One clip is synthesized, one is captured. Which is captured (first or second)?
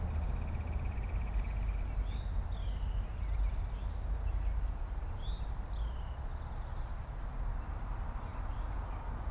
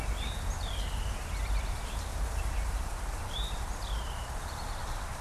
first